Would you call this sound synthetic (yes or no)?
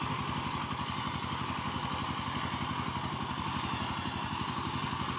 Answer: no